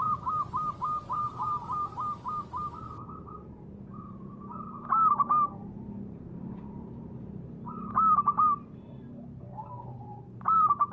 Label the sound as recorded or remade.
remade